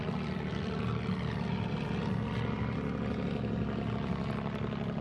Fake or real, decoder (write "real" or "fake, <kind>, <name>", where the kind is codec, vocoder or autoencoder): real